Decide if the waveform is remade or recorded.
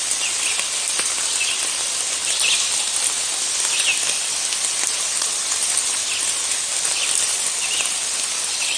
recorded